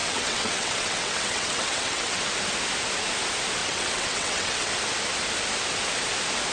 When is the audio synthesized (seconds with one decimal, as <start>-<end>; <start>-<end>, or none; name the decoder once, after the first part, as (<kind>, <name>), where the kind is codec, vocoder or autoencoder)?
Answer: 0.0-2.2 (vocoder, WaveNeXt); 3.6-4.7